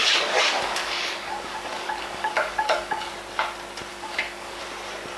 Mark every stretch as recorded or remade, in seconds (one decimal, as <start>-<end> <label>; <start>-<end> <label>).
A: 0.0-3.1 remade; 3.1-3.9 recorded; 3.9-4.6 remade; 4.6-5.2 recorded